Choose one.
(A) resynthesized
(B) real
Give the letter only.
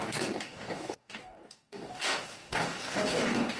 A